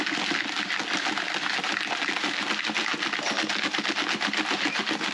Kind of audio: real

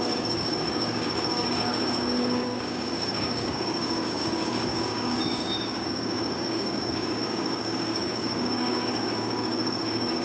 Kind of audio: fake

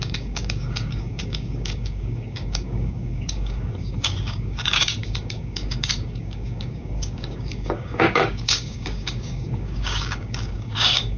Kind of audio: fake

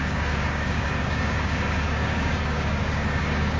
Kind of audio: fake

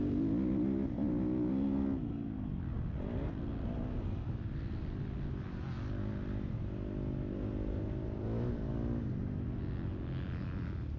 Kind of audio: real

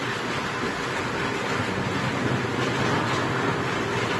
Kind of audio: real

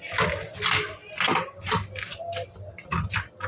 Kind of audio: real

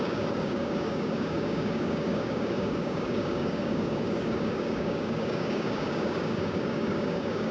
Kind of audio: fake